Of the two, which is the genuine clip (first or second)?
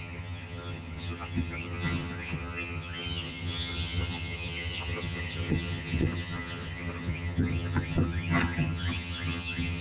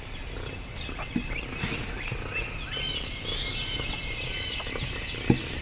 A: second